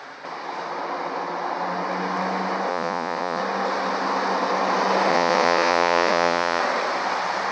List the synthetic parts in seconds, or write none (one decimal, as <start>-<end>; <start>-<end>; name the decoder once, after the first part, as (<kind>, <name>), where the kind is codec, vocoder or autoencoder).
2.7-3.4 (vocoder, Vocos); 5.1-6.6